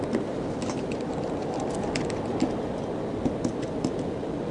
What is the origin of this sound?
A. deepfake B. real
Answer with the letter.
B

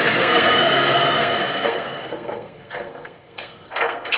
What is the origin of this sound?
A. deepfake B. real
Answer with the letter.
A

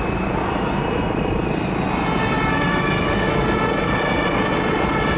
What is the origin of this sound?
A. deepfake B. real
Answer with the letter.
B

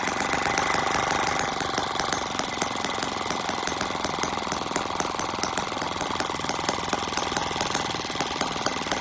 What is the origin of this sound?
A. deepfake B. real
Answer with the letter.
B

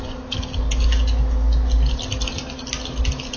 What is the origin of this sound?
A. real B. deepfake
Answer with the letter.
A